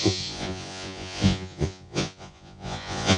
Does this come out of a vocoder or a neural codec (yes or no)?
yes